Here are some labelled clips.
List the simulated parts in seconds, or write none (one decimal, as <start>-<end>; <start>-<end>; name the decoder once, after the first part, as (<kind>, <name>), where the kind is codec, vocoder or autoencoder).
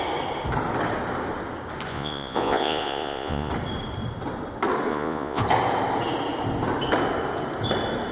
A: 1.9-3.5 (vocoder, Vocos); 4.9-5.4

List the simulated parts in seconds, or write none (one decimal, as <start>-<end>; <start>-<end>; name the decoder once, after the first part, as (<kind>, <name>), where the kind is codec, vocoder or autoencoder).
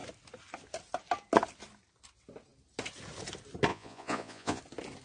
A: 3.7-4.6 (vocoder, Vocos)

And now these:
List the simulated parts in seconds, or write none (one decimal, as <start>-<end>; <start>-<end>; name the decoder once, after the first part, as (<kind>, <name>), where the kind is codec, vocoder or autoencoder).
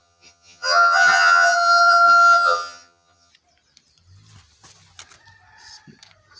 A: 0.0-3.3 (vocoder, HiFi-GAN)